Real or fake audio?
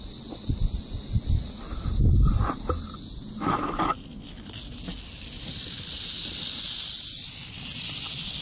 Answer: real